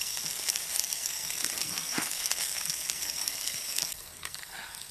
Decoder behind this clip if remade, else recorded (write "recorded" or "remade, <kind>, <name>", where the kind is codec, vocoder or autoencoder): remade, codec, SNAC